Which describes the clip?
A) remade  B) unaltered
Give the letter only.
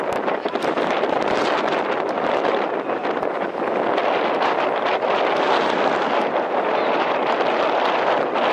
A